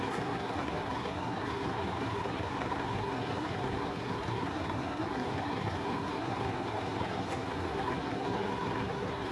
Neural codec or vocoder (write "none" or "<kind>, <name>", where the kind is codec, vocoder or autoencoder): codec, SNAC